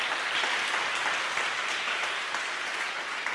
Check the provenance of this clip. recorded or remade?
recorded